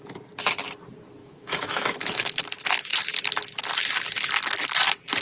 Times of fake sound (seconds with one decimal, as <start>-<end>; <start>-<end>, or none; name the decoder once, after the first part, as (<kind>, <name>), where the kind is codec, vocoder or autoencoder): 1.2-2.4 (autoencoder, DAC-VAE)